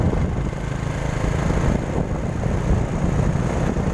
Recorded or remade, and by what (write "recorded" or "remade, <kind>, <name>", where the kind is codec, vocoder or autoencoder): recorded